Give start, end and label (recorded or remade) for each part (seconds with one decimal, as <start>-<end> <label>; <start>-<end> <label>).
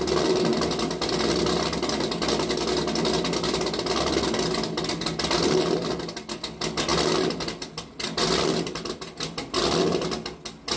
0.0-10.8 recorded